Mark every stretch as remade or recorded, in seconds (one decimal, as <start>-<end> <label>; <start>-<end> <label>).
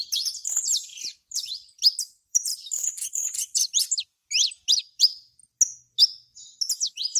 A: 0.0-0.9 remade; 0.9-2.1 recorded; 2.1-4.2 remade; 4.2-4.8 recorded; 4.8-5.4 remade; 5.4-7.2 recorded